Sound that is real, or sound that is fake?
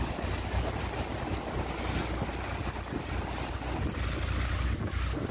real